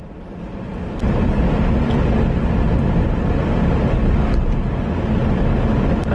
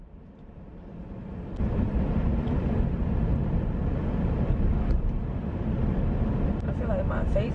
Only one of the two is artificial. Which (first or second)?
second